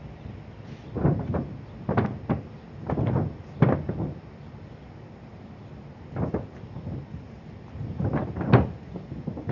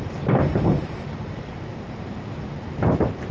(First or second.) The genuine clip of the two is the first